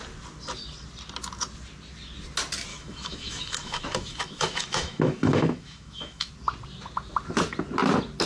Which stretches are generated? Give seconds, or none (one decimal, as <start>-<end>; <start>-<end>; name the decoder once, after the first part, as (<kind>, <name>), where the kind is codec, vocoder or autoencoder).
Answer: 2.7-6.3 (autoencoder, DAC-VAE)